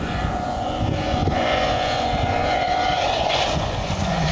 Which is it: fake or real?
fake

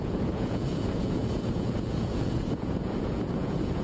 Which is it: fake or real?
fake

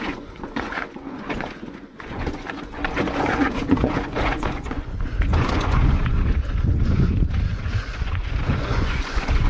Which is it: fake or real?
fake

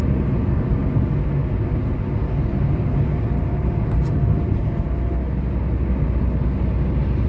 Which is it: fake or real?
real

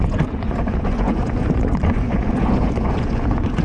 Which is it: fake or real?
fake